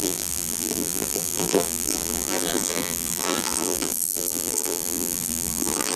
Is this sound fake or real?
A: fake